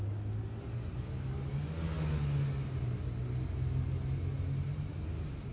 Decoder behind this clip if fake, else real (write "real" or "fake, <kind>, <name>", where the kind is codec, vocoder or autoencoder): real